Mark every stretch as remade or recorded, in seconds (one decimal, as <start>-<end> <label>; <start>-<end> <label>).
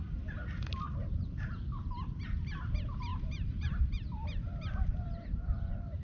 0.0-6.0 recorded